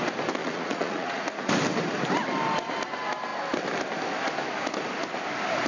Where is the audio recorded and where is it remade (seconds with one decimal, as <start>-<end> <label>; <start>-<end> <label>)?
0.0-0.4 recorded; 0.4-1.5 remade; 1.5-5.7 recorded